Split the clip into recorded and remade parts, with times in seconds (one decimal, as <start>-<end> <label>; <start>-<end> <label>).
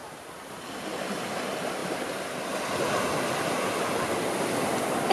0.0-5.1 recorded